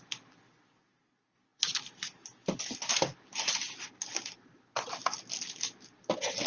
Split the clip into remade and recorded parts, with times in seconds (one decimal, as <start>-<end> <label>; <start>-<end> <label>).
0.0-6.5 recorded

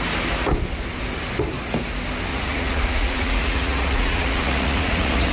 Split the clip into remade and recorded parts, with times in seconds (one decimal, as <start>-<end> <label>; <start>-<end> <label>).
0.0-2.3 recorded; 2.3-5.3 remade

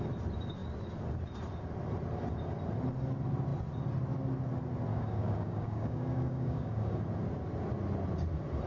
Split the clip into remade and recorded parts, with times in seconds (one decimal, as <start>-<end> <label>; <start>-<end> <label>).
0.0-4.9 recorded; 4.9-7.0 remade; 7.0-8.7 recorded

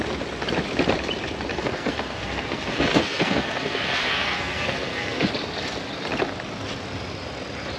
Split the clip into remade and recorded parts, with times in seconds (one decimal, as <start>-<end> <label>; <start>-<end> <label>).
0.0-1.5 recorded; 1.5-5.3 remade; 5.3-7.8 recorded

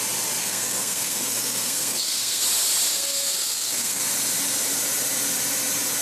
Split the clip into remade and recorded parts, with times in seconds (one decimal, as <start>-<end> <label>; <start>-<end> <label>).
0.0-0.4 recorded; 0.4-2.4 remade; 2.4-2.9 recorded; 2.9-4.0 remade; 4.0-6.0 recorded

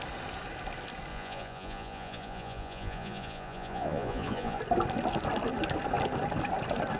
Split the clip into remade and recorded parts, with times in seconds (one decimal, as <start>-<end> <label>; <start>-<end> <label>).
0.0-1.1 recorded; 1.1-4.6 remade; 4.6-7.0 recorded

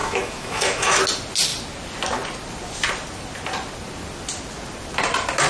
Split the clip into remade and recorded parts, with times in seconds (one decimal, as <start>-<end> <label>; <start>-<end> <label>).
0.0-1.0 remade; 1.0-5.5 recorded

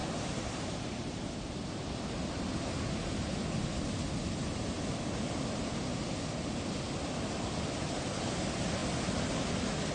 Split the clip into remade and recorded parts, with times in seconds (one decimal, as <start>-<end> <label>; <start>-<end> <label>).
0.0-1.3 remade; 1.3-5.9 recorded; 5.9-6.6 remade; 6.6-9.9 recorded